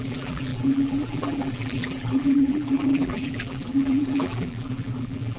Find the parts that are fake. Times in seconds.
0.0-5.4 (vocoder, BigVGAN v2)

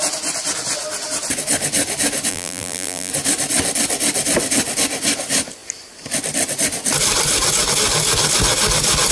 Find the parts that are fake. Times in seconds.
2.3-3.1 (vocoder, BigVGAN v2)

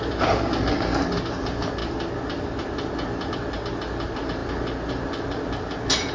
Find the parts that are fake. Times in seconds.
none

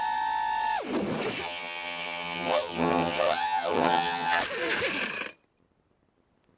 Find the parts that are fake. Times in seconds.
1.4-4.4 (vocoder, HiFi-GAN)

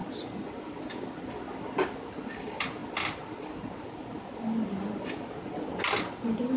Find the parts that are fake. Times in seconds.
none